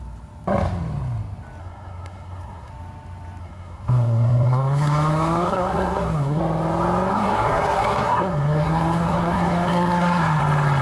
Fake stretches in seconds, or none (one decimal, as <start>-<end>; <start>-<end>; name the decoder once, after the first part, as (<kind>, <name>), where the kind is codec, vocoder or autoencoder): 1.6-2.7 (codec, SNAC); 3.4-6.4; 7.1-10.4